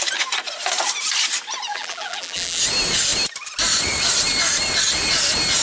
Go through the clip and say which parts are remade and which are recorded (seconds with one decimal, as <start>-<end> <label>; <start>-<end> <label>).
0.0-1.7 recorded; 1.7-2.6 remade; 2.6-5.6 recorded